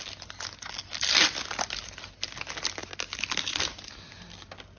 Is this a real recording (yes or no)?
yes